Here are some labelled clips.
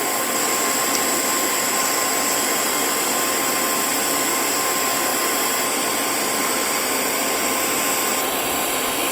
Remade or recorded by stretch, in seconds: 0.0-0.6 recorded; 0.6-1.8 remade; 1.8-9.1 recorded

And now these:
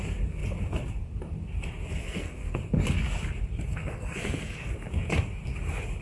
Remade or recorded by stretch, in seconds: 0.0-2.0 recorded; 2.0-2.6 remade; 2.6-3.7 recorded; 3.7-4.7 remade; 4.7-6.0 recorded

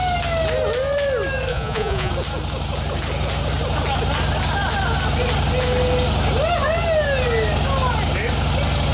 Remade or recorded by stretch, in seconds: 0.0-1.5 recorded; 1.5-2.1 remade; 2.1-8.9 recorded

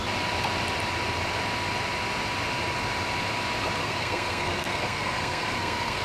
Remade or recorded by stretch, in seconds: 0.0-3.8 recorded; 3.8-6.0 remade

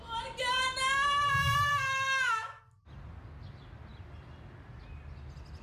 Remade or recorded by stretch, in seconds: 0.0-1.7 recorded; 1.7-2.6 remade; 2.6-5.6 recorded